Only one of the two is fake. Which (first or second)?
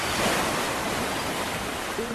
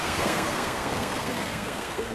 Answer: second